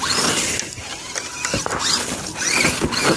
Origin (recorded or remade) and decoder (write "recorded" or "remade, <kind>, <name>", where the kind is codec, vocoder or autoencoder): recorded